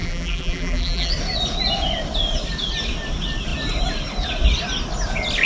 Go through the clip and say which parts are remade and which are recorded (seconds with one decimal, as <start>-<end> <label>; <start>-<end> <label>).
0.0-1.1 remade; 1.1-5.5 recorded